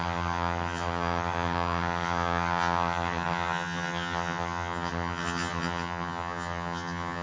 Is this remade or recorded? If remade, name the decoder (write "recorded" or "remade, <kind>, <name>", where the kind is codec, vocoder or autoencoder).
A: remade, vocoder, HiFi-GAN